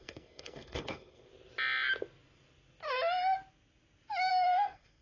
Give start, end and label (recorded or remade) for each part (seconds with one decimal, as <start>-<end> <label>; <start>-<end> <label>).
0.0-1.3 remade; 1.3-4.3 recorded; 4.3-5.0 remade